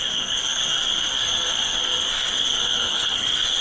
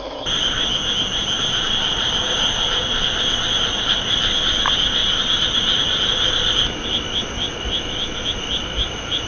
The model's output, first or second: first